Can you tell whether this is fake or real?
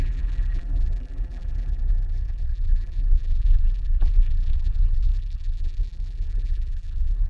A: fake